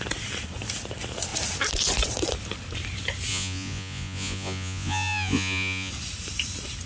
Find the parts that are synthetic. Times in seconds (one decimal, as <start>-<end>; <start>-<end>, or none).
3.3-5.9